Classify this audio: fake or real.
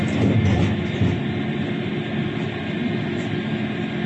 real